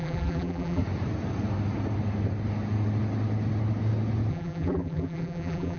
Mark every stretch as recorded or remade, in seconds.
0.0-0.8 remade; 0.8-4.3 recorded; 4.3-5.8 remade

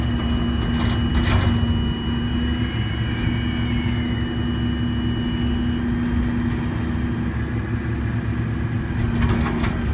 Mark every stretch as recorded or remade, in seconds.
0.0-9.9 recorded

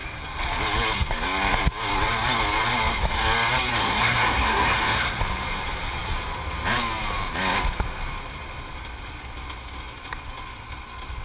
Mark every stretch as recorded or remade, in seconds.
0.0-3.8 recorded; 3.8-5.2 remade; 5.2-11.2 recorded

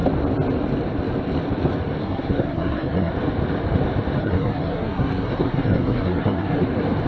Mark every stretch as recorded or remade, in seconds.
0.0-2.0 recorded; 2.0-3.1 remade; 3.1-4.2 recorded; 4.2-6.6 remade; 6.6-7.1 recorded